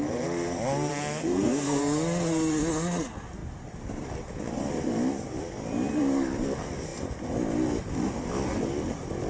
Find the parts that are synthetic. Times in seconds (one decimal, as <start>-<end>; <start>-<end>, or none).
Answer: 0.9-1.8